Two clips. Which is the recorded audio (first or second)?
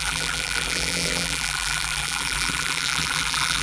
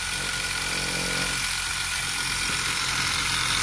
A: second